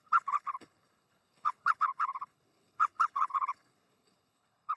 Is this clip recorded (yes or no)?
no